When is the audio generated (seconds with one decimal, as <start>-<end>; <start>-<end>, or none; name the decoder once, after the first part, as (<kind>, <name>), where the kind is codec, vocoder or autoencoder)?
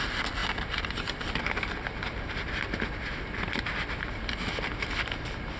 none